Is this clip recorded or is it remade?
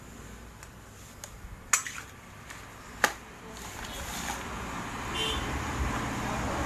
recorded